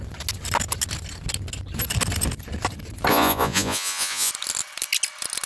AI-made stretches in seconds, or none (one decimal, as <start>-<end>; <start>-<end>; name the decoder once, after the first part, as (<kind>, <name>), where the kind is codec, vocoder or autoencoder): 3.1-4.3 (vocoder, Vocos)